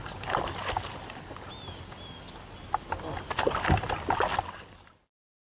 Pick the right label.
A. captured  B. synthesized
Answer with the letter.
A